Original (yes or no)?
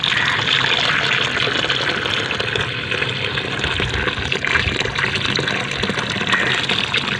yes